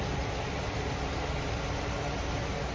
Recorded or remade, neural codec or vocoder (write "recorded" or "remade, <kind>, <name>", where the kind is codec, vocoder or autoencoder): recorded